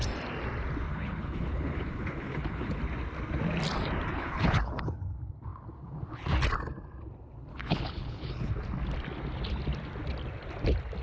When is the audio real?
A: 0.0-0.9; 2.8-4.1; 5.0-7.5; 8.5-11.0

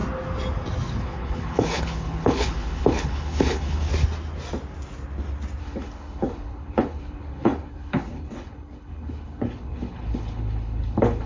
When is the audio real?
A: 0.0-1.0; 3.9-5.6

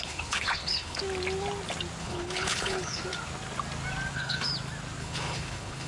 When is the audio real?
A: 1.0-2.0; 3.0-4.1; 4.5-5.0